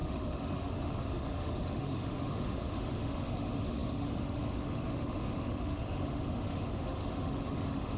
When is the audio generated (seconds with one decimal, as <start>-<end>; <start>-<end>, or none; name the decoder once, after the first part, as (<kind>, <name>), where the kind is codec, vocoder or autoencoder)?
0.0-8.0 (autoencoder, DAC-VAE)